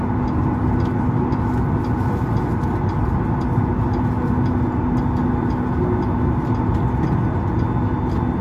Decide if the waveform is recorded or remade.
recorded